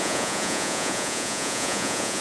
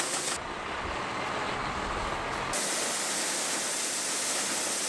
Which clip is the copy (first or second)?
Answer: first